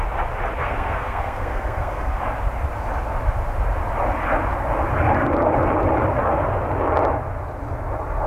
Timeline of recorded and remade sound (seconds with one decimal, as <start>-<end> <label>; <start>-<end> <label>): 0.0-0.6 recorded; 0.6-2.2 remade; 2.2-8.3 recorded